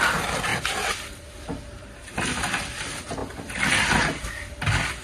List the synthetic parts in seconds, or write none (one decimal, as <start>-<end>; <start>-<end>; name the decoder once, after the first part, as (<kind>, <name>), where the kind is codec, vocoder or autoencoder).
none